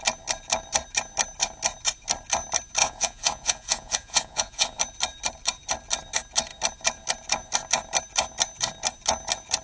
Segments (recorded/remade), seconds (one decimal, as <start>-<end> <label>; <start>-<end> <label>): 0.0-2.8 recorded; 2.8-4.8 remade; 4.8-9.6 recorded